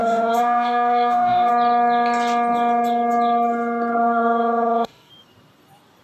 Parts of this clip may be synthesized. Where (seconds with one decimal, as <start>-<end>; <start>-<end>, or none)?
0.0-1.5; 4.0-5.1